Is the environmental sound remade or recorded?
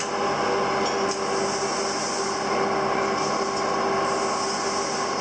recorded